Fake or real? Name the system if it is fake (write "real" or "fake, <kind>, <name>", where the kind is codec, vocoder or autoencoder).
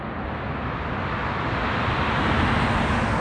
real